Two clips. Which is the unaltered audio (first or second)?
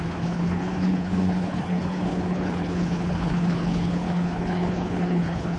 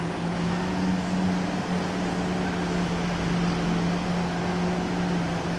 second